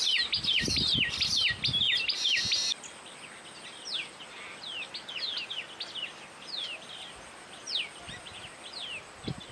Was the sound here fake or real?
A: real